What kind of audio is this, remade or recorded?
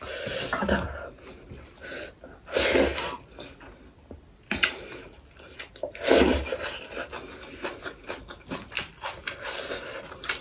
recorded